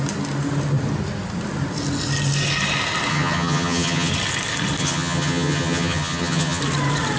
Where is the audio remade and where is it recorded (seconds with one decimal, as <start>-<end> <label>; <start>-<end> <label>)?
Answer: 0.0-3.1 recorded; 3.1-4.1 remade; 4.1-4.8 recorded; 4.8-6.6 remade; 6.6-7.2 recorded